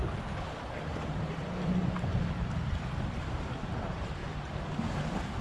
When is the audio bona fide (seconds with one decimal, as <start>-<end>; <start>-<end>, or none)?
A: 0.0-0.7; 1.4-3.7; 4.2-5.4

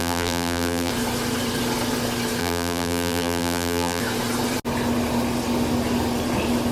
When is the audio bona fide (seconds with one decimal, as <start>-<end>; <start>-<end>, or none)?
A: 0.9-2.4; 4.0-6.7

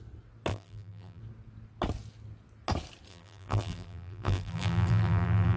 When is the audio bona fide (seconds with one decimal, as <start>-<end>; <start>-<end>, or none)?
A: 0.0-0.5; 1.2-3.1

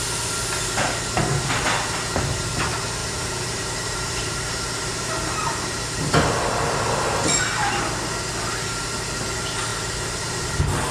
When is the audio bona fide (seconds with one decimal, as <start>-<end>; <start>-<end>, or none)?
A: 0.0-3.0; 6.1-9.7; 10.5-10.9

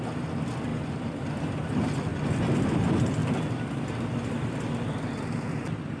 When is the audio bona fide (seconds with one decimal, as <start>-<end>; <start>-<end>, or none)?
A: 0.0-0.7; 1.2-3.2; 4.5-6.0

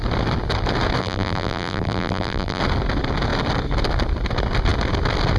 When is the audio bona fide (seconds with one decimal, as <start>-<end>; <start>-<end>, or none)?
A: 0.0-1.0; 2.6-5.4

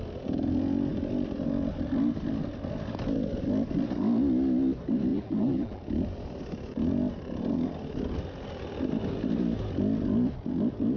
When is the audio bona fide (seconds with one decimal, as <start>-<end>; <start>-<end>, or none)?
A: 0.0-5.1; 5.8-11.0

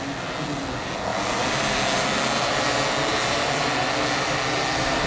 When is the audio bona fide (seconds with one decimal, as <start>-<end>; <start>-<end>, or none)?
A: 0.0-5.1